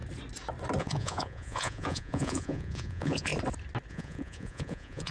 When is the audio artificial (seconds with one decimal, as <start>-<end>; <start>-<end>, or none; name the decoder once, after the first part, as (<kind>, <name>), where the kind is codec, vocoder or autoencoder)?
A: 0.8-3.3 (vocoder, Vocos); 3.9-5.1